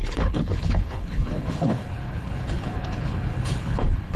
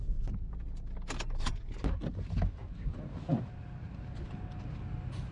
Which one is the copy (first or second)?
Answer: first